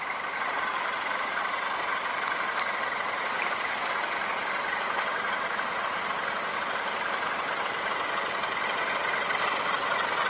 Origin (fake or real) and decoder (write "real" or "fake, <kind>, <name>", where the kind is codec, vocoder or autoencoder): real